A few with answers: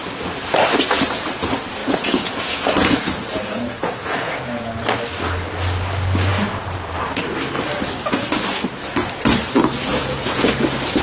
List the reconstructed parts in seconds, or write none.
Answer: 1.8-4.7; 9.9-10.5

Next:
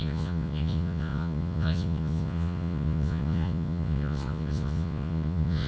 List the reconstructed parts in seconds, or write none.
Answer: 0.0-5.7

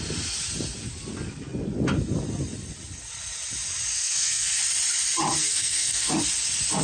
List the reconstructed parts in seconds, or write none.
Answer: 3.9-4.6; 5.3-6.1

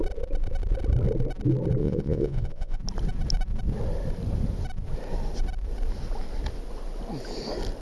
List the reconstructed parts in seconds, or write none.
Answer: 1.8-2.8

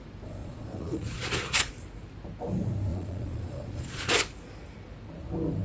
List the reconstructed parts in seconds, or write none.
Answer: 0.4-1.7; 2.9-4.1

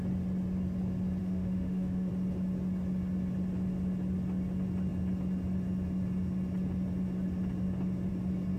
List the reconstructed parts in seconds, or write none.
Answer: 1.2-2.1